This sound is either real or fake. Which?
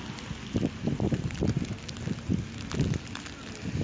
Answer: real